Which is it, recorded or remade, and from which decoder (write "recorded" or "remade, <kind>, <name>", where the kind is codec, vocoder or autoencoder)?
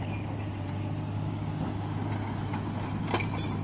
recorded